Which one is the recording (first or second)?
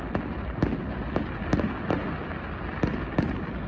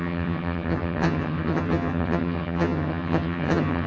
first